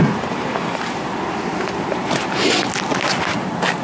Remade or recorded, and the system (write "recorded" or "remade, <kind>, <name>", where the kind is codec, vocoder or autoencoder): recorded